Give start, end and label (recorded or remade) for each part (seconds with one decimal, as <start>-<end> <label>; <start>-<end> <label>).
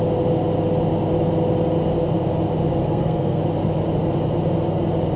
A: 0.0-2.8 recorded; 2.8-3.4 remade; 3.4-5.2 recorded